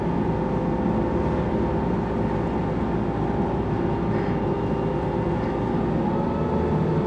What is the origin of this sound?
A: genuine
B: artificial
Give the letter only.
A